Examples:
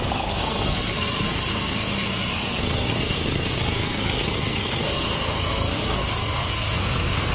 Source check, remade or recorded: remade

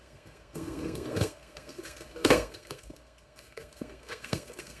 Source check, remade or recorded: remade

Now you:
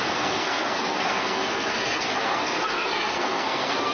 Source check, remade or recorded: remade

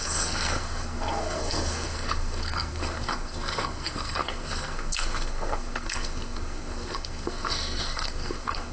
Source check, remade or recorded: remade